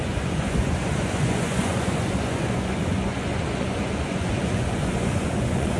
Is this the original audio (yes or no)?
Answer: no